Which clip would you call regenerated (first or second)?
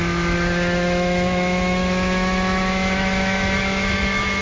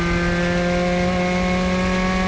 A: first